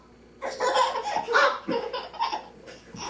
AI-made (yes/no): no